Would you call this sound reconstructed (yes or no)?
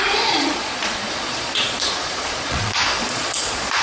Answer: yes